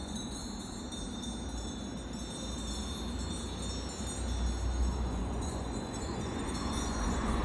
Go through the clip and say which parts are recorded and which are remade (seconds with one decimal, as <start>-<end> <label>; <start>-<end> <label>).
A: 0.0-0.4 remade; 0.4-4.8 recorded; 4.8-7.4 remade